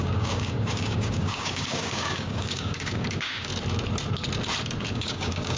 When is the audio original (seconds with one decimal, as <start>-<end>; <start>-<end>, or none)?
3.5-4.9